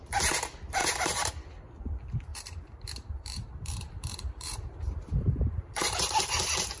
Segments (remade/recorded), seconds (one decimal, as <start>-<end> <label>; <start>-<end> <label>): 0.0-0.8 recorded; 0.8-1.4 remade; 1.4-2.3 recorded; 2.3-6.2 remade; 6.2-6.8 recorded